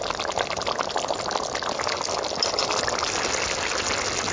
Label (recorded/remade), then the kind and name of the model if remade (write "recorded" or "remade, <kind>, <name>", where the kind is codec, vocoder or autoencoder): recorded